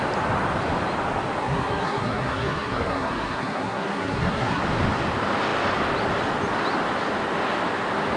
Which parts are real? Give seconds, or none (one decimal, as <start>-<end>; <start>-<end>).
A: 0.0-1.4; 4.6-8.2